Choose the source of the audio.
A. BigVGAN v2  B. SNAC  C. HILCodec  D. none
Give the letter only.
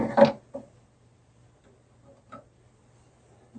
D